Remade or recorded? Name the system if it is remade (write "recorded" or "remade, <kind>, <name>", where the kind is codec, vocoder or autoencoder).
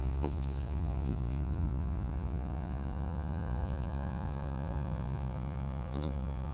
remade, vocoder, Vocos